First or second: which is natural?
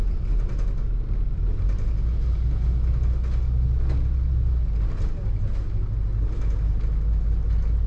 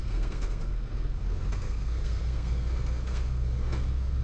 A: first